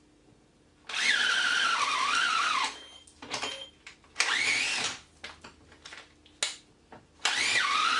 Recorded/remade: recorded